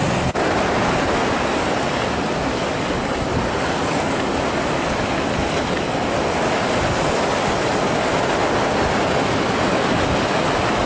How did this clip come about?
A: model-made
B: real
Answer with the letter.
B